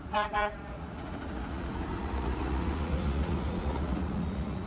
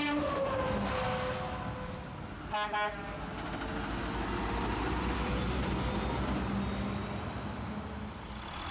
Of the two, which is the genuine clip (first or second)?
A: second